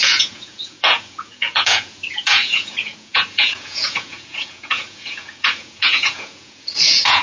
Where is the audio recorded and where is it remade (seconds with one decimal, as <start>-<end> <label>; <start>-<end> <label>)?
0.0-7.2 remade